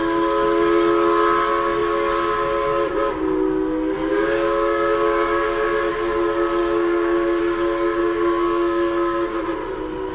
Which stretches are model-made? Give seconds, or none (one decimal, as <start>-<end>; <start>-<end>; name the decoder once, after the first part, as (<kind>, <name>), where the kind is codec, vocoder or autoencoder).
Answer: 4.1-5.9 (codec, DAC); 6.6-7.4; 8.0-9.4